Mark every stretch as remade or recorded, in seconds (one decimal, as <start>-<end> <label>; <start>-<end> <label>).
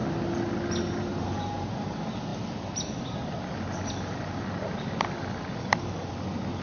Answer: 0.0-6.6 recorded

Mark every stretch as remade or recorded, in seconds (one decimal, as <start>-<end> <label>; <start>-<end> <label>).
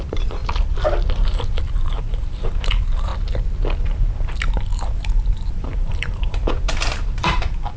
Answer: 0.0-0.4 remade; 0.4-1.6 recorded; 1.6-3.1 remade; 3.1-3.8 recorded; 3.8-7.8 remade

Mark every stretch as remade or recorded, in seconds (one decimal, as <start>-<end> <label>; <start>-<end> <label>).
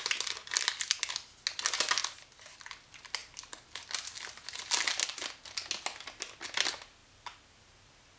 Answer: 0.0-8.2 recorded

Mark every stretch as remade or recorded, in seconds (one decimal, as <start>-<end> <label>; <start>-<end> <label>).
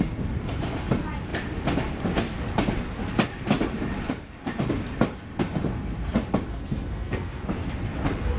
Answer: 0.0-6.5 recorded; 6.5-7.4 remade; 7.4-8.4 recorded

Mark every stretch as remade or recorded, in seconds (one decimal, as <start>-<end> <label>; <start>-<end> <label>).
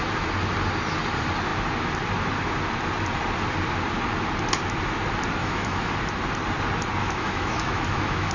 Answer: 0.0-5.4 recorded; 5.4-5.9 remade; 5.9-7.0 recorded; 7.0-8.3 remade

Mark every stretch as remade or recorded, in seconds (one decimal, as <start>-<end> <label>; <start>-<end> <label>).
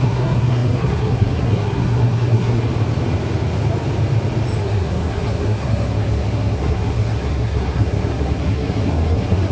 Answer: 0.0-2.7 remade; 2.7-4.6 recorded; 4.6-9.5 remade